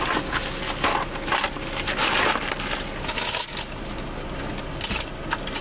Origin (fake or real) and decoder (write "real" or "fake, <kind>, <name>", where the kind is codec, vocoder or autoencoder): real